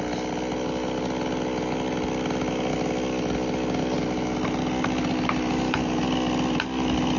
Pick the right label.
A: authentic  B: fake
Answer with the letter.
A